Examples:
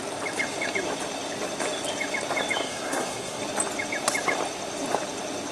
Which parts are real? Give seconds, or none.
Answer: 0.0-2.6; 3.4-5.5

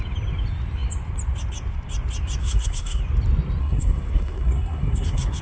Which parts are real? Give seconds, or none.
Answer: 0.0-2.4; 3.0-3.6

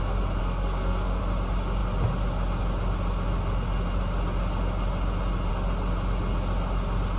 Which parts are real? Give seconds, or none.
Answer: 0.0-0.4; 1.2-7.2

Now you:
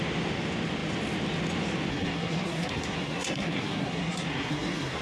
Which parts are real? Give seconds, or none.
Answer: 0.0-1.9

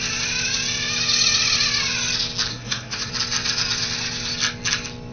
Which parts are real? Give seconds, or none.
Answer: 0.0-2.5; 3.1-5.1

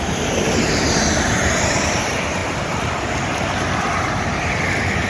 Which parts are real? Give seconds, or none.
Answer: 0.0-5.1